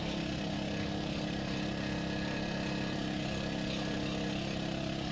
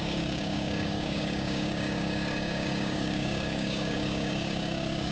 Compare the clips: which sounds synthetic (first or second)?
second